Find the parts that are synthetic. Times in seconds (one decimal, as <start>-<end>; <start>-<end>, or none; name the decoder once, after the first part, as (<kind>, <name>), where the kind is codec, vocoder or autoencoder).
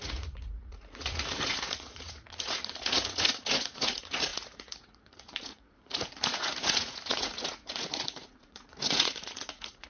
0.0-9.9 (vocoder, Vocos)